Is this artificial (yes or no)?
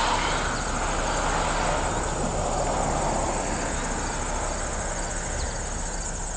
no